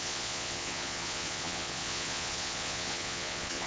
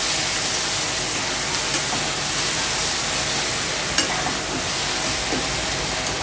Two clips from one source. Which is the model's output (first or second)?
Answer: first